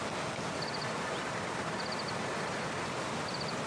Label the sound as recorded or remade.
recorded